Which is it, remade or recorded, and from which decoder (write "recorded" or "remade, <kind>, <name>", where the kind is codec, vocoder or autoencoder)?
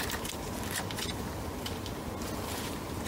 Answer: recorded